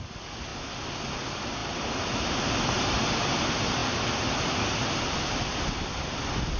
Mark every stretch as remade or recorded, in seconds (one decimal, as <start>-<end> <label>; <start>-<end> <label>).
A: 0.0-6.6 recorded